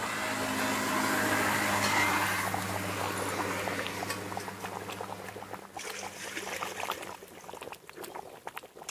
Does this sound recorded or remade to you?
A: recorded